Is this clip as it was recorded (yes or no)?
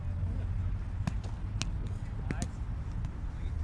yes